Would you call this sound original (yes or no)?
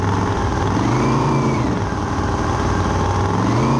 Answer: yes